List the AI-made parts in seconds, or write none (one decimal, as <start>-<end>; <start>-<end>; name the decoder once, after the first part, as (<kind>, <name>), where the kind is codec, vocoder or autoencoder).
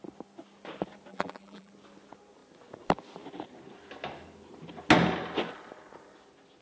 1.1-1.7 (vocoder, BigVGAN v2)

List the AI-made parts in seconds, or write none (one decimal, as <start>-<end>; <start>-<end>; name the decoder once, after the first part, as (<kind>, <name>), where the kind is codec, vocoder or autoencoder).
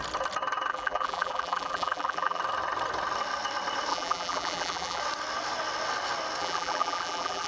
0.7-2.4 (vocoder, BigVGAN v2); 3.9-5.0; 6.4-7.5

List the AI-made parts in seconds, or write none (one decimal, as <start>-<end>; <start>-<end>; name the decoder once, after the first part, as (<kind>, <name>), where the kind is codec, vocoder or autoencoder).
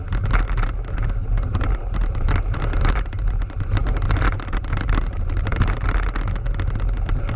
1.2-5.6 (vocoder, BigVGAN v2)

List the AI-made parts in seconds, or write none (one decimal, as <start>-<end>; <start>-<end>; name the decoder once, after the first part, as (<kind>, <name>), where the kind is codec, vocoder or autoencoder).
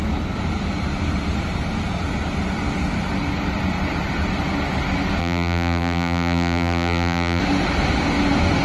5.2-7.4 (vocoder, BigVGAN v2)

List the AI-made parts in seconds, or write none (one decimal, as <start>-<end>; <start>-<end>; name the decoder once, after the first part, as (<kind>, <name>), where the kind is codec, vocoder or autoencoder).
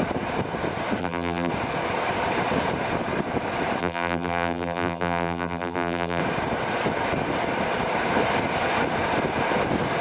1.0-1.5 (vocoder, BigVGAN v2); 3.8-6.2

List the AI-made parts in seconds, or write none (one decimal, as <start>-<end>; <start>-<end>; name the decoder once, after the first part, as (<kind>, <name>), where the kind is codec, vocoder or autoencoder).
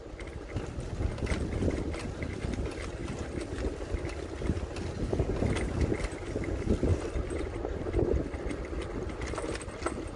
1.1-2.1 (vocoder, BigVGAN v2); 3.0-4.8; 6.9-8.2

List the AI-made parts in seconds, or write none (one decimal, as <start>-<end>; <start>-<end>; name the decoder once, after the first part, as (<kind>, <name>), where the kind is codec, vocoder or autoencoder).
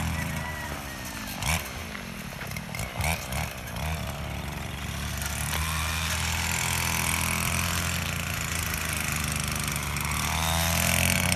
none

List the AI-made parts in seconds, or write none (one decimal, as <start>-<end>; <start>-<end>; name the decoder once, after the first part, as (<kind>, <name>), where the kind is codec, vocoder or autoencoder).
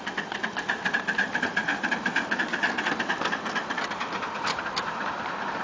0.0-5.6 (vocoder, BigVGAN v2)